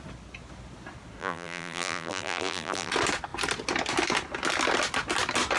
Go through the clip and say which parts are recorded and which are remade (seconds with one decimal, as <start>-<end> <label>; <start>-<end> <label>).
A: 0.0-1.2 recorded; 1.2-2.9 remade; 2.9-5.6 recorded